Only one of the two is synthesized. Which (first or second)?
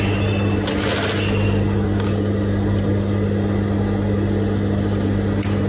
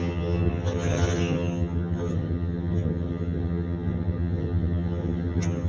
second